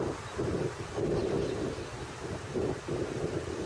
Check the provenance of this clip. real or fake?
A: real